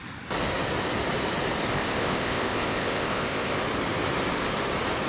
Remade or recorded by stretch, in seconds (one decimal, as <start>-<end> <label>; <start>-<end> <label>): 0.0-1.7 recorded; 1.7-3.6 remade; 3.6-5.1 recorded